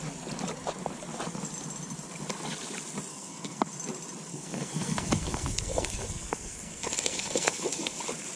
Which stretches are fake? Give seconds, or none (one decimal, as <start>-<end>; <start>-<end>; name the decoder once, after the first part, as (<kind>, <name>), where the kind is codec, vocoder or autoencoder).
3.1-3.6 (codec, SNAC); 4.3-8.0